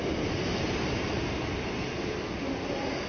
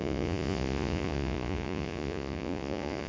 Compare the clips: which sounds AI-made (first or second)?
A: second